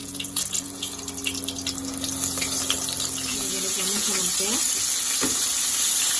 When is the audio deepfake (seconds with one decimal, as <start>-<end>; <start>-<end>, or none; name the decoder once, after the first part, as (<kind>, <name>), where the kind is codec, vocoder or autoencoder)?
0.0-1.0 (vocoder, Vocos); 3.3-4.2